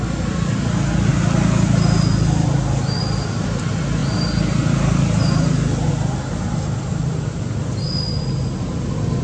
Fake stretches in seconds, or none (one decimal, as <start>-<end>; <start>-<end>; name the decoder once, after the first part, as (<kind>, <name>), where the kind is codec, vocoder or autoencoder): none